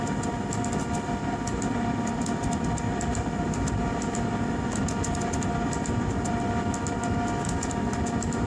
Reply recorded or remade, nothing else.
recorded